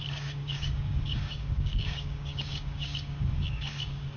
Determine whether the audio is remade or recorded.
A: remade